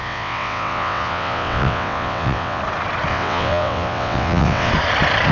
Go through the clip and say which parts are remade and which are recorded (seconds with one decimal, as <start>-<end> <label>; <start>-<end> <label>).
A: 0.0-2.6 remade; 2.6-3.1 recorded; 3.1-4.7 remade; 4.7-5.3 recorded